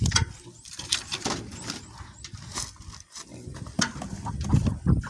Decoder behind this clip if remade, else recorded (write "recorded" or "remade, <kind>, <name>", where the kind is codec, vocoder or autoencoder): recorded